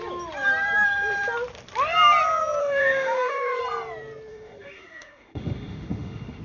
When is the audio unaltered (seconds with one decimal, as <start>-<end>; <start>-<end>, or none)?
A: 0.0-2.6; 3.6-4.3